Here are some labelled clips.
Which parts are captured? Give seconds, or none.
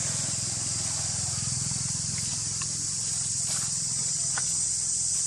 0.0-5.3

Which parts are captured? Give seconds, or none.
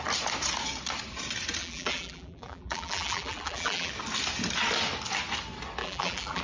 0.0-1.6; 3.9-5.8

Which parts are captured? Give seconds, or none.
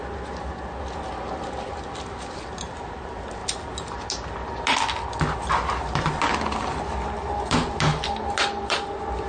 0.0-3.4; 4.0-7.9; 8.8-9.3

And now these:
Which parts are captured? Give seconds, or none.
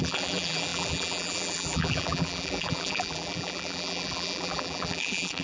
none